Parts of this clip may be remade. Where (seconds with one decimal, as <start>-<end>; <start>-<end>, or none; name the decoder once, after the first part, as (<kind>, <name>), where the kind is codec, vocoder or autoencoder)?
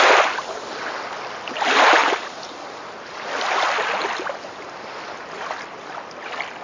2.0-5.7 (vocoder, BigVGAN v2)